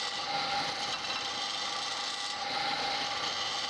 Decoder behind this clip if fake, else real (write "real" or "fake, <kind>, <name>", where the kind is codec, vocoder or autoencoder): real